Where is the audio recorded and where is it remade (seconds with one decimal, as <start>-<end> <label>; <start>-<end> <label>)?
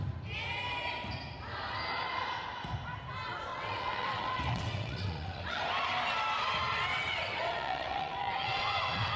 0.0-3.5 recorded; 3.5-5.6 remade; 5.6-6.9 recorded; 6.9-9.2 remade